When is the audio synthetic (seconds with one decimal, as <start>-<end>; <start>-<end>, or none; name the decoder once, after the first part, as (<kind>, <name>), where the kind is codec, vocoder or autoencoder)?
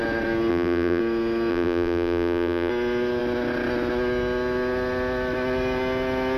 0.5-1.0 (vocoder, BigVGAN v2); 1.5-2.7